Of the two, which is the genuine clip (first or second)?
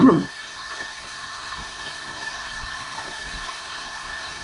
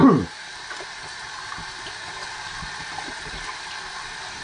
second